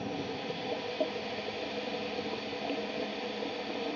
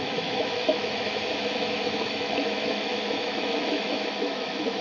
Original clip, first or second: first